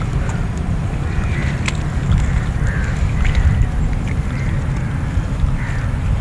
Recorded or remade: recorded